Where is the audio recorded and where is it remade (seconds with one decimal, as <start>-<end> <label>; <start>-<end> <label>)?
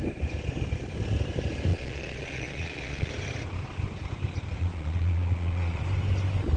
0.0-1.7 recorded; 1.7-3.1 remade; 3.1-4.6 recorded; 4.6-5.8 remade; 5.8-6.6 recorded